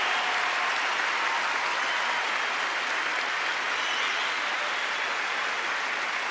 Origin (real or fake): real